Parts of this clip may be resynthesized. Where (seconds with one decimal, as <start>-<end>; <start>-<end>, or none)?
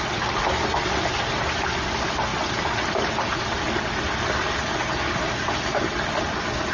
none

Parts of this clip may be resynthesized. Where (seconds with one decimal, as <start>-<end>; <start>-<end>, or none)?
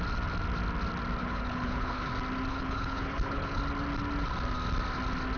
1.2-2.1; 2.5-3.6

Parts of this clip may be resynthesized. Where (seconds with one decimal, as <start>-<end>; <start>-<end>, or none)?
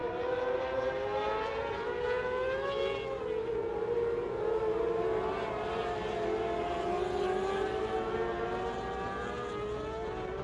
none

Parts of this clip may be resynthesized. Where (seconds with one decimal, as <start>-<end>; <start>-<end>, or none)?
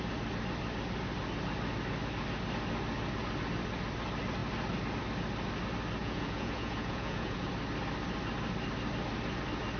6.0-7.5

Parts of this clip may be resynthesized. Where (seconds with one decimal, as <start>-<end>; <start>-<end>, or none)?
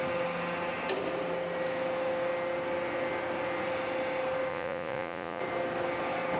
4.5-5.4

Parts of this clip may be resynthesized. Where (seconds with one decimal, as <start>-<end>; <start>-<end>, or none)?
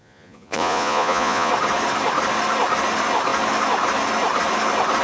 0.0-1.5